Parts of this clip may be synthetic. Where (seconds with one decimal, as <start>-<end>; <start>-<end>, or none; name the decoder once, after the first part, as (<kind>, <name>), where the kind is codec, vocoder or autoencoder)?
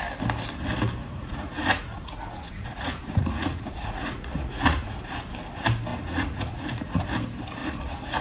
1.0-5.0 (vocoder, Vocos); 5.9-7.1; 7.6-8.2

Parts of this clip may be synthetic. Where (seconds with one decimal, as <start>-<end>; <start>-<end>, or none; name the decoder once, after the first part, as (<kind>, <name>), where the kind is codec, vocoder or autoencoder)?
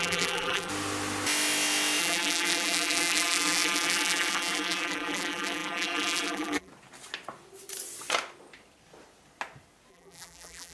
0.0-0.7 (vocoder, BigVGAN v2); 2.0-6.7; 9.9-10.7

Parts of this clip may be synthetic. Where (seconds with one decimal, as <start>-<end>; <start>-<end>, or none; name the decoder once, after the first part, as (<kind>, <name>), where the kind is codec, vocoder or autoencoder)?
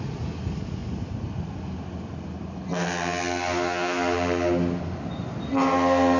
none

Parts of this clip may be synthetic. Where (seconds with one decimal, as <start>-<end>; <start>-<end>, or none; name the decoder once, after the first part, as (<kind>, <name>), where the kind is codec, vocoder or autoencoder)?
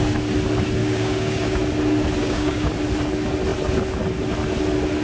0.8-1.6 (codec, DAC); 2.2-2.7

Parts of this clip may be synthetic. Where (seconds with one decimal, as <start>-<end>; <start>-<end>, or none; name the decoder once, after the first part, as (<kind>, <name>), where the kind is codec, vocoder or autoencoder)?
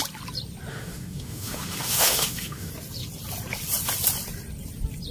0.7-2.7 (autoencoder, DAC-VAE)